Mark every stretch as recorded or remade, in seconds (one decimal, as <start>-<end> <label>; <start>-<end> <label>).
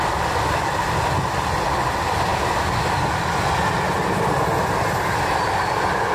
0.0-6.1 recorded